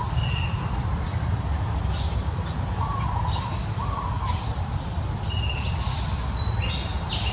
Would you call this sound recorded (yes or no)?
no